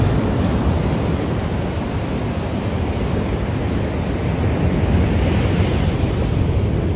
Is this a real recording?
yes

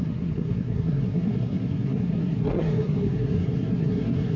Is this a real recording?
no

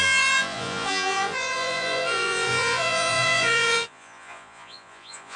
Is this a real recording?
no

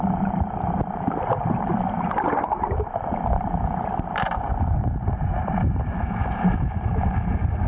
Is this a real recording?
no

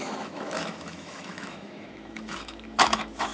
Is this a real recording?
no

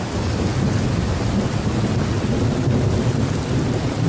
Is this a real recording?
yes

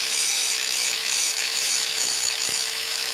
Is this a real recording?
no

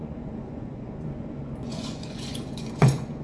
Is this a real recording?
no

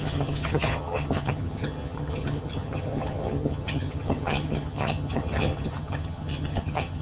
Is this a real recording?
no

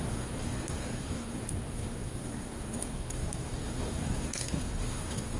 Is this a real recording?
no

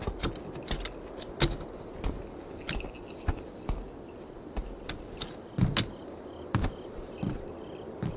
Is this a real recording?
yes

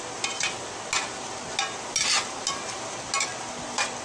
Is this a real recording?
yes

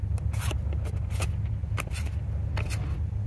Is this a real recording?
yes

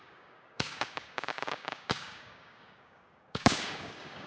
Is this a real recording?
no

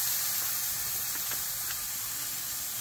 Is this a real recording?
yes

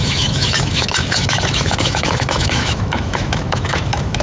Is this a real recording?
no